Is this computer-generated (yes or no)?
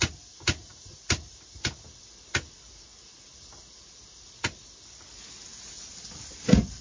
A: no